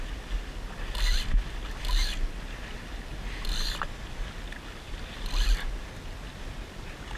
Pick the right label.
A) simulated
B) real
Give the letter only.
B